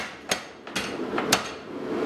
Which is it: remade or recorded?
recorded